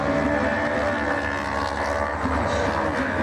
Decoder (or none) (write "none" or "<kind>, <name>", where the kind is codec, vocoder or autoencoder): none